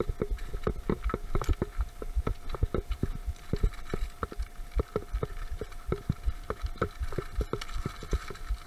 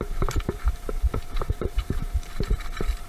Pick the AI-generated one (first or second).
second